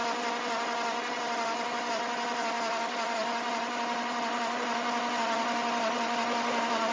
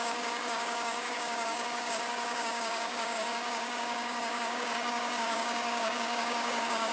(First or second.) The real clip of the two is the first